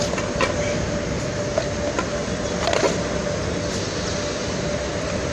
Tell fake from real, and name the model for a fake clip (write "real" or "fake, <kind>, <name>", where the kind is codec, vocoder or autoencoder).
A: real